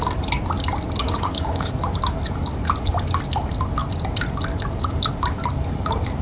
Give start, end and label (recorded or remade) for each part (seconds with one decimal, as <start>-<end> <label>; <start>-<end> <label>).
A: 0.0-1.0 recorded; 1.0-1.7 remade; 1.7-6.2 recorded